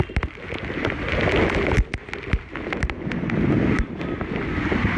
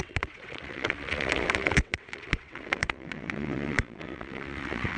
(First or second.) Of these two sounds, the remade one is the second